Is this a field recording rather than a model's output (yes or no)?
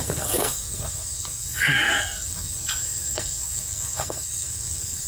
no